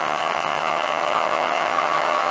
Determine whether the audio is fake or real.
fake